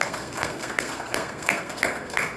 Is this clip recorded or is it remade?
remade